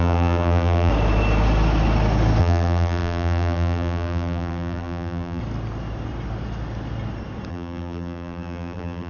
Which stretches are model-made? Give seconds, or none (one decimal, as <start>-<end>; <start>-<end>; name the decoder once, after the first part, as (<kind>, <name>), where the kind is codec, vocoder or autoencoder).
0.0-0.9 (vocoder, BigVGAN v2); 2.4-5.4; 7.5-9.1